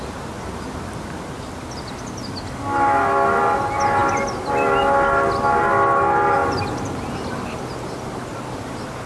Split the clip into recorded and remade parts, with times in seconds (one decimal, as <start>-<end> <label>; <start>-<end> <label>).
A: 0.0-9.1 recorded